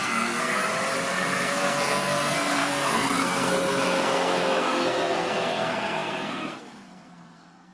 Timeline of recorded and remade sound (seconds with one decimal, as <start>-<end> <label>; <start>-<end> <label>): 0.0-0.6 remade; 0.6-1.1 recorded; 1.1-7.7 remade